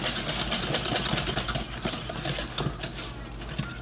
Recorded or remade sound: recorded